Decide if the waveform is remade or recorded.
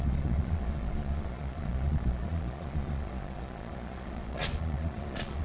remade